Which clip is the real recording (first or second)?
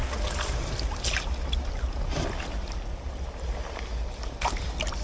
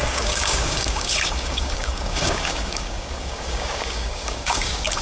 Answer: first